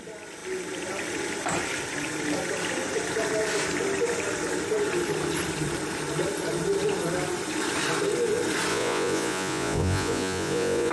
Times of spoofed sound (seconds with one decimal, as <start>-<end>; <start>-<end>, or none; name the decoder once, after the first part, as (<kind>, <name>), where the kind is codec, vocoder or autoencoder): 8.7-10.9 (vocoder, Vocos)

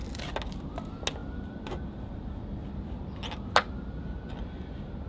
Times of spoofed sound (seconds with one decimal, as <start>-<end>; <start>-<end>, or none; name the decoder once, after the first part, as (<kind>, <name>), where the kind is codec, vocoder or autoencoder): none

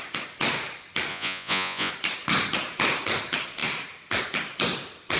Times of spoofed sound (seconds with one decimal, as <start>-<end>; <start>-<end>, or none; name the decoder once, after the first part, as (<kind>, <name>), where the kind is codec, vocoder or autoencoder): 1.1-1.9 (vocoder, Vocos)